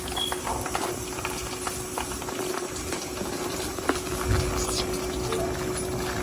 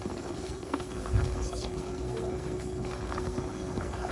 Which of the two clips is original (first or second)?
first